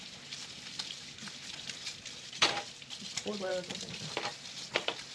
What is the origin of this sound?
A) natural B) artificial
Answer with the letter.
A